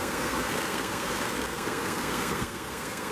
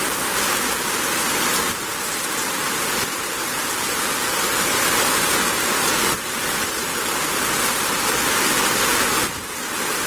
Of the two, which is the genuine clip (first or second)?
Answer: second